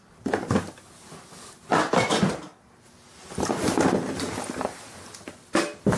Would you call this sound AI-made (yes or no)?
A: no